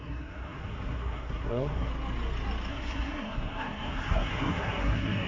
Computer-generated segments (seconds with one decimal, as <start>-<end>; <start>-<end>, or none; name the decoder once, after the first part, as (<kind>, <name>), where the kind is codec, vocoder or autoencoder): 0.0-1.9 (codec, SNAC); 2.7-5.3